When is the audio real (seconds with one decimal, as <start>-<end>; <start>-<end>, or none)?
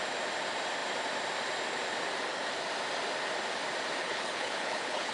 0.0-4.0